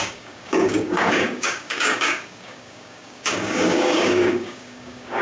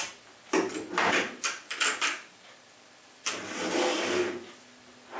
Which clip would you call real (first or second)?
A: second